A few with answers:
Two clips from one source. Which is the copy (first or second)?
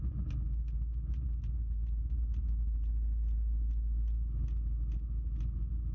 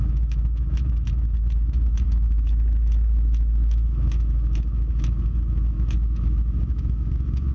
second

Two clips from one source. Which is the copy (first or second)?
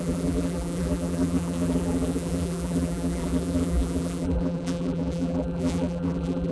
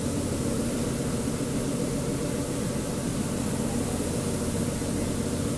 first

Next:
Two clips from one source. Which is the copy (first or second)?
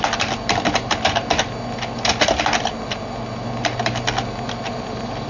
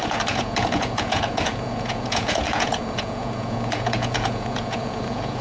second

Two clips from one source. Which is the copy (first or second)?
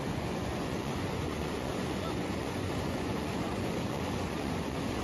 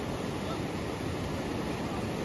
first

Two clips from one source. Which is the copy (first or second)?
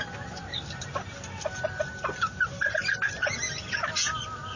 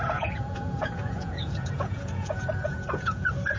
second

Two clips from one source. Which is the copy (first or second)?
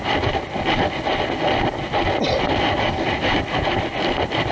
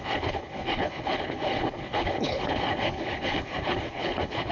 second